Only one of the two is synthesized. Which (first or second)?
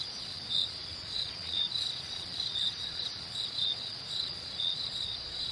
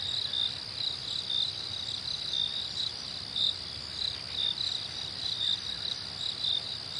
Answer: first